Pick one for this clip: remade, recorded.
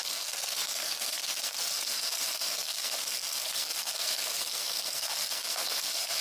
remade